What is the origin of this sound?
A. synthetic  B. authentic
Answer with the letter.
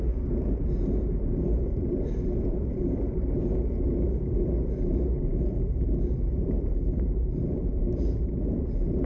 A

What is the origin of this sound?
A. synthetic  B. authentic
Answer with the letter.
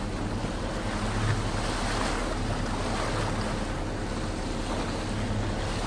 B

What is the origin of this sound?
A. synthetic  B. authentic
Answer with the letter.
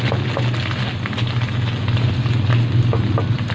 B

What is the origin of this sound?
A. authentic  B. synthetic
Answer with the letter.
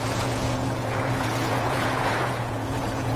B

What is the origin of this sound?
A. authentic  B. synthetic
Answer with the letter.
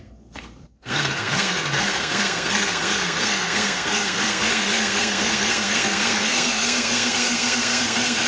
B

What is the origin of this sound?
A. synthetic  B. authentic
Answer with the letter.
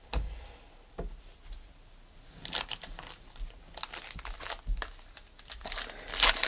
B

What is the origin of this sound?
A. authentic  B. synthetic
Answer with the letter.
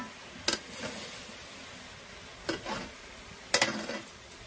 A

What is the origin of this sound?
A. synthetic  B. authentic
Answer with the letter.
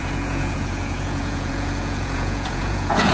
A